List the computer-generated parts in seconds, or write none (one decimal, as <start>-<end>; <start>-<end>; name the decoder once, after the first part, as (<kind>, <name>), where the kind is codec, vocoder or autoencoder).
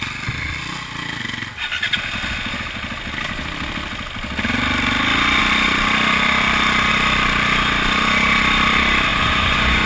9.1-9.9 (vocoder, Vocos)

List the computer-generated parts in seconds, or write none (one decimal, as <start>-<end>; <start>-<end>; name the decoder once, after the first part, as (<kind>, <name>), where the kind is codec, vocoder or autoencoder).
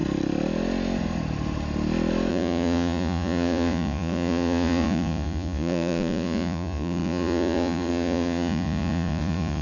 2.3-9.6 (vocoder, Vocos)